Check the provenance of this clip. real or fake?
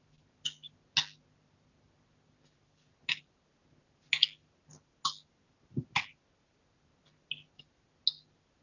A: real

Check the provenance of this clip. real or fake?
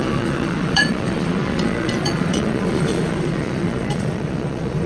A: fake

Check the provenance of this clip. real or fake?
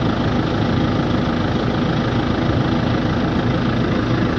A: real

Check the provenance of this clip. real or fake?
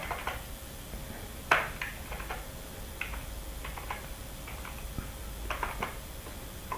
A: real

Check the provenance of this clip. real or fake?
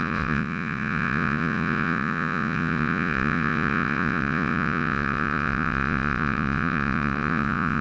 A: fake